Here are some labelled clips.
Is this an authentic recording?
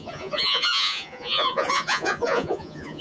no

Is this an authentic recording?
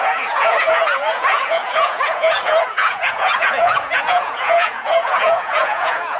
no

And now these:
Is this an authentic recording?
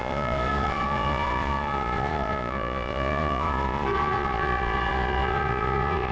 no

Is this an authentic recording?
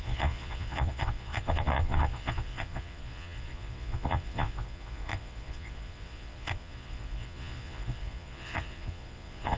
no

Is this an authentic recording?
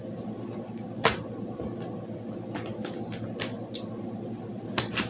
yes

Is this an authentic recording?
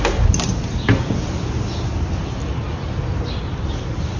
yes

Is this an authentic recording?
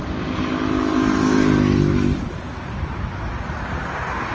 yes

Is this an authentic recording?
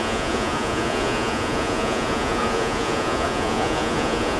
no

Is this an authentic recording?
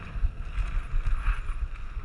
yes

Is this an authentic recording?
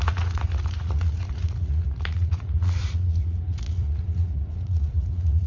no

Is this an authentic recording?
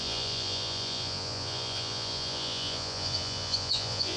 no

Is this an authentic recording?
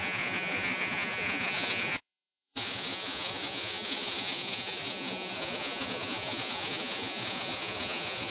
no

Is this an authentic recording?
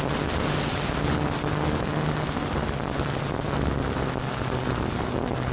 yes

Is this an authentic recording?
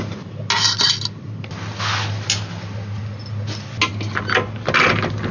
yes